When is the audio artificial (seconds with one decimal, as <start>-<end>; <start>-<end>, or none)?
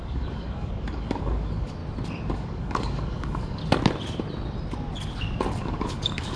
0.0-1.8; 2.3-3.6; 5.5-6.4